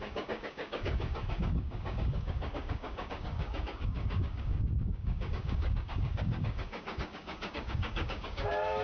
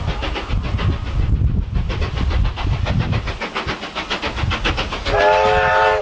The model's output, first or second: first